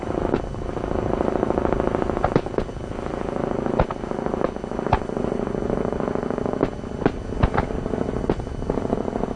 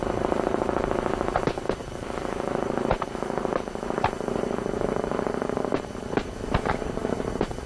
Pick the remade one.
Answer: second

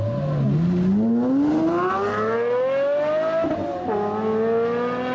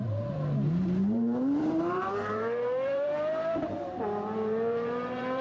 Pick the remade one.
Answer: second